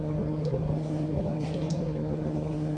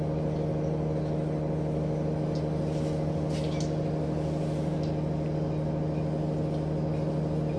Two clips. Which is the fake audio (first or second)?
first